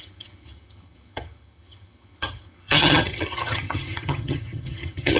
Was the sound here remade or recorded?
remade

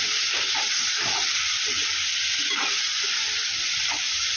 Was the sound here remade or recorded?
recorded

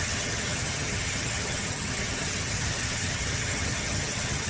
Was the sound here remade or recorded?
remade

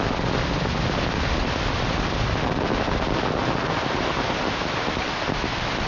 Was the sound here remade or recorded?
recorded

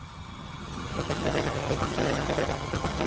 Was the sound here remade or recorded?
remade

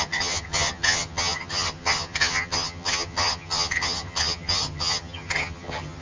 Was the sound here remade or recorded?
remade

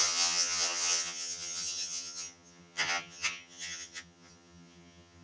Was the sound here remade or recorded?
remade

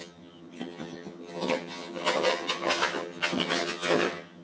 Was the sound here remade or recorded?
remade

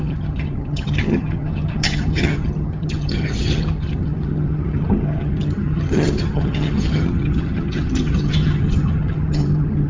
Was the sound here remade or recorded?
remade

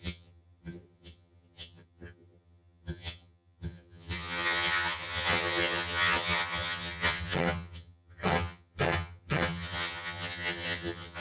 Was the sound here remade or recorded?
remade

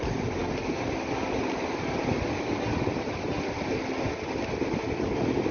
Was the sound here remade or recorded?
recorded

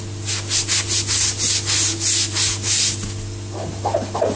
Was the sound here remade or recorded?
recorded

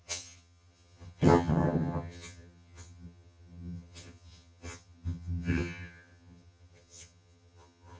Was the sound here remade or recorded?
remade